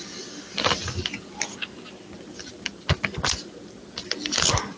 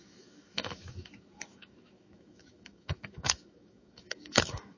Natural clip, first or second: first